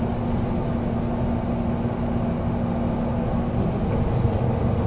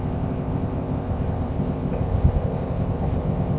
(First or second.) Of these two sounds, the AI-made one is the second